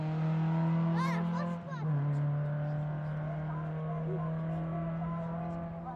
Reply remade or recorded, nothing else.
recorded